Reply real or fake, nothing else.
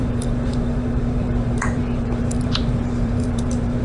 fake